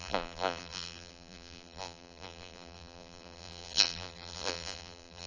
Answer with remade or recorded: remade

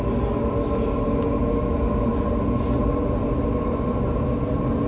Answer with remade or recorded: recorded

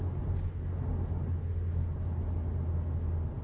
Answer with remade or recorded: recorded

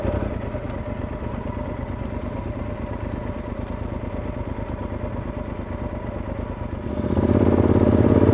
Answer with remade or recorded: recorded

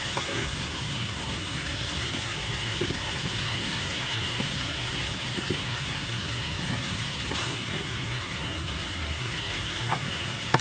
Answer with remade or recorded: remade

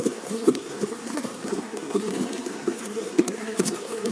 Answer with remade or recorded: remade